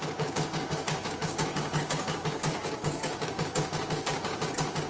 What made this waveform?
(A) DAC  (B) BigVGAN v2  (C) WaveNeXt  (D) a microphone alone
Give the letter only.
A